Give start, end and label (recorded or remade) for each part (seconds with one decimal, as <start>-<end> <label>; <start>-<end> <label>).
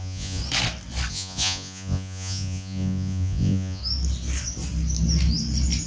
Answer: 0.0-0.4 remade; 0.4-1.1 recorded; 1.1-3.8 remade; 3.8-5.9 recorded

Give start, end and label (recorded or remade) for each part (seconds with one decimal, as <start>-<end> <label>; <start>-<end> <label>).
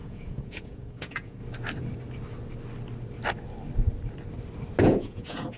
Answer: 0.0-1.4 remade; 1.4-4.8 recorded; 4.8-5.6 remade